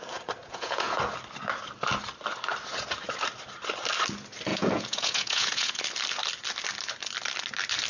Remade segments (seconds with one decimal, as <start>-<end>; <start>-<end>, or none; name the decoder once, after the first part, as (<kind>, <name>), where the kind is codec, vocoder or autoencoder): 0.4-1.0 (vocoder, Vocos); 4.5-5.8